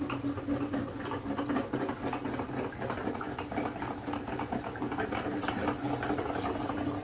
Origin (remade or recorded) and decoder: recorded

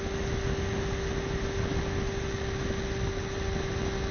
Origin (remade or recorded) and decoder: recorded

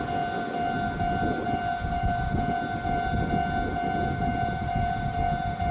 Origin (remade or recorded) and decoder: recorded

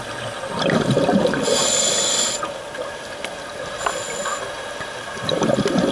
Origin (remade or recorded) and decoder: recorded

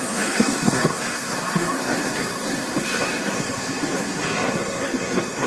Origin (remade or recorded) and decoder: remade, codec, SNAC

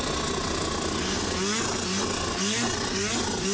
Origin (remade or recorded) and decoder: recorded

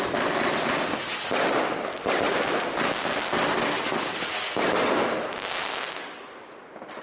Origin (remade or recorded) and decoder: recorded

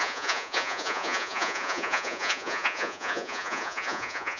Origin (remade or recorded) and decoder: remade, vocoder, Vocos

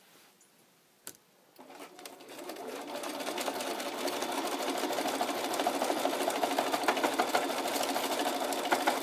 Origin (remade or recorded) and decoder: recorded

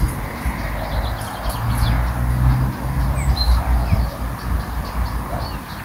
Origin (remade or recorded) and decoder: recorded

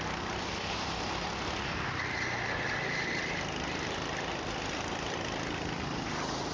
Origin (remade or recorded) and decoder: recorded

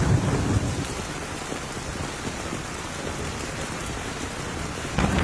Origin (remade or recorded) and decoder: remade, vocoder, BigVGAN v2